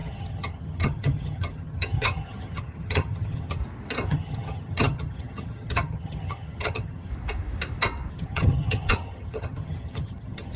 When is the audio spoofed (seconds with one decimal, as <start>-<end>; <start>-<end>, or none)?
0.0-3.6; 4.1-7.1; 8.1-10.6